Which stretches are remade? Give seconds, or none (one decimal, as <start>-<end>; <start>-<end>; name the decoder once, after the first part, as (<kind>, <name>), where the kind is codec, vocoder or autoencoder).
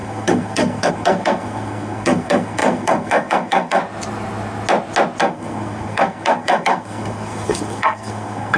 0.0-3.8 (codec, SNAC); 5.2-8.6